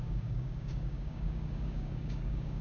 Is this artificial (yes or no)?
yes